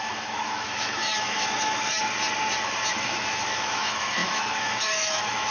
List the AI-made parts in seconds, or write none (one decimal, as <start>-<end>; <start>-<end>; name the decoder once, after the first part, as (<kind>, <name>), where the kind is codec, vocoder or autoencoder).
0.0-2.0 (autoencoder, DAC-VAE); 2.9-5.5